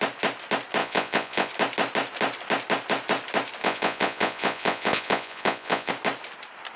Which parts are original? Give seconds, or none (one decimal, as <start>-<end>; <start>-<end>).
0.0-0.8; 1.5-3.6; 5.9-6.8